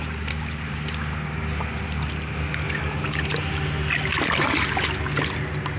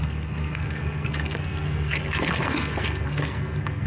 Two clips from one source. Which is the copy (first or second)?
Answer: second